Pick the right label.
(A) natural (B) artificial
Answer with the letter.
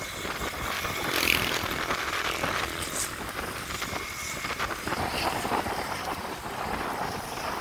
A